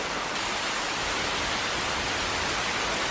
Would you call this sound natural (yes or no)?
yes